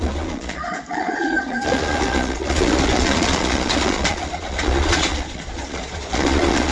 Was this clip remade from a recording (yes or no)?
yes